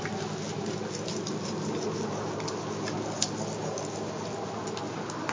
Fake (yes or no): no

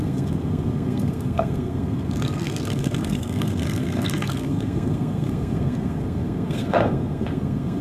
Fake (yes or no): yes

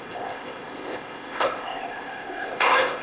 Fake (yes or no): yes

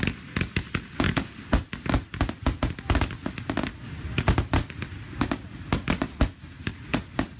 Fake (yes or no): no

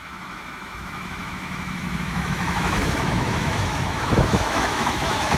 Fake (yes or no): yes